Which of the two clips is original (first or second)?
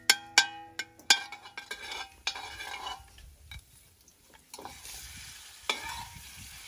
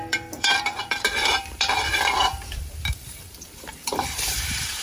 first